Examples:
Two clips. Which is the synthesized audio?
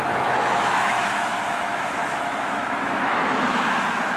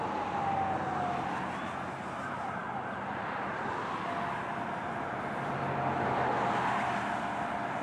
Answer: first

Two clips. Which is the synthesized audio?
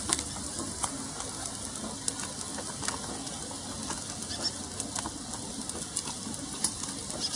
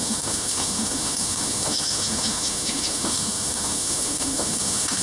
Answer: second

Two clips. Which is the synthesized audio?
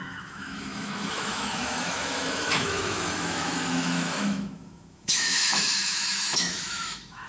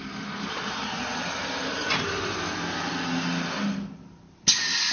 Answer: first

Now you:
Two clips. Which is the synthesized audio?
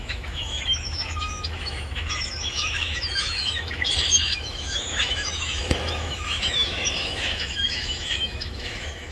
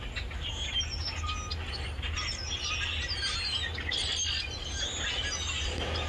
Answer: first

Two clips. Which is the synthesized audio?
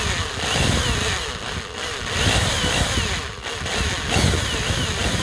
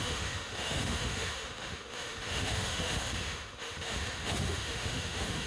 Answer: second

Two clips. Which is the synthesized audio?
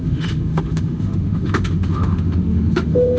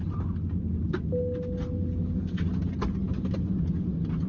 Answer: first